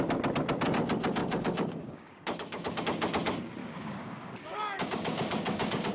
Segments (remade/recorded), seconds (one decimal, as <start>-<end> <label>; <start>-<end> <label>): 0.0-1.2 recorded; 1.2-2.8 remade; 2.8-3.6 recorded; 3.6-5.9 remade